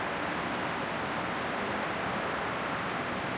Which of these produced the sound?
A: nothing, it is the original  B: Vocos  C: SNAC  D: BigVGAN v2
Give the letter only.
A